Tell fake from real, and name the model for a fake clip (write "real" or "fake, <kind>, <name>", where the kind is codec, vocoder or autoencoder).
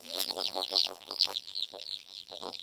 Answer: fake, vocoder, BigVGAN v2